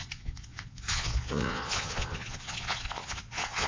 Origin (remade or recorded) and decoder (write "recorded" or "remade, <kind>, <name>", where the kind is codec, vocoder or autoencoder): remade, vocoder, Vocos